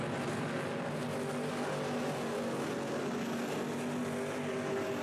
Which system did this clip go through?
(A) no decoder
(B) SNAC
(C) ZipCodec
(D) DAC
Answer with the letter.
A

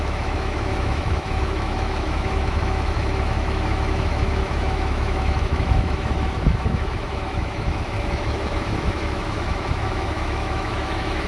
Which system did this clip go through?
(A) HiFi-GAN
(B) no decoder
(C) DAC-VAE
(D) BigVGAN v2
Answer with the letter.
C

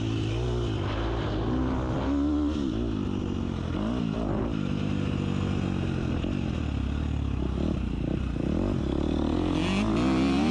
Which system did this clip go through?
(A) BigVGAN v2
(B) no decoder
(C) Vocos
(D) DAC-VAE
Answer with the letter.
B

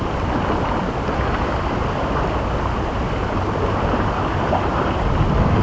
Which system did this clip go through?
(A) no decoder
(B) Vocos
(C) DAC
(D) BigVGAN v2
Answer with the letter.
A